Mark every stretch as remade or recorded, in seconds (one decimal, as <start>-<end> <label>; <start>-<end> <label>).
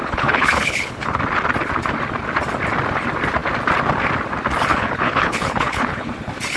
0.0-1.2 remade; 1.2-4.7 recorded; 4.7-6.1 remade; 6.1-6.6 recorded